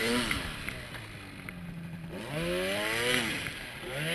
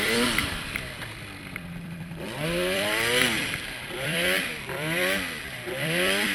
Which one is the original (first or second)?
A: first